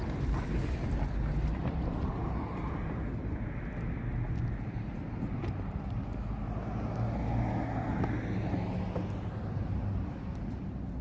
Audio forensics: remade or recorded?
recorded